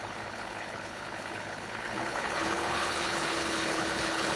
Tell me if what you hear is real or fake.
fake